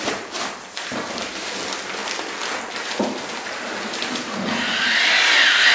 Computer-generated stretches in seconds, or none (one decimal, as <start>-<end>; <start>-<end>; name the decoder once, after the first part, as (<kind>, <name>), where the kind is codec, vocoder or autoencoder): none